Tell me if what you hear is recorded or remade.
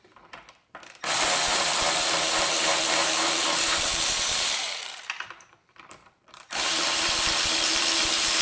remade